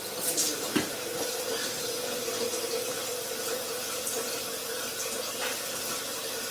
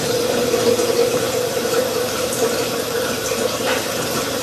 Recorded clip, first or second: first